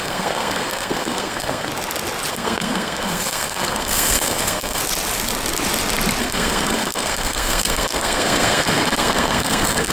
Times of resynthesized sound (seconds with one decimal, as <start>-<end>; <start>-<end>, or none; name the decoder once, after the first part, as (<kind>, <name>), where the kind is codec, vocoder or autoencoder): 0.0-1.7 (codec, SNAC); 2.3-4.8; 6.2-9.9